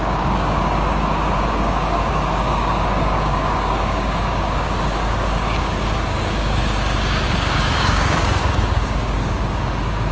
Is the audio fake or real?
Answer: fake